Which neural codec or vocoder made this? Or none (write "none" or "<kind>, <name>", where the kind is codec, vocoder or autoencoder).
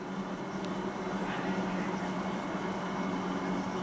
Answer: none